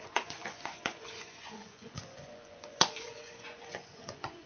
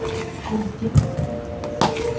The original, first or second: second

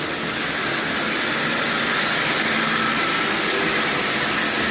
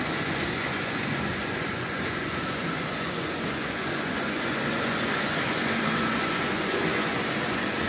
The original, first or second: first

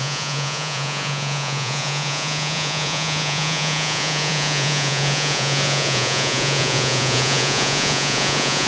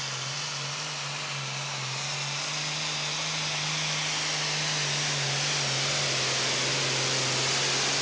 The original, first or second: second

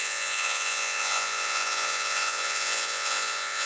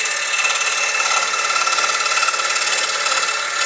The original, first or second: second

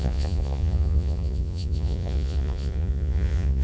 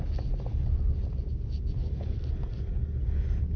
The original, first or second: second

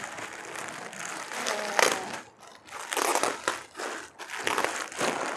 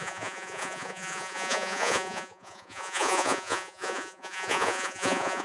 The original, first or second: first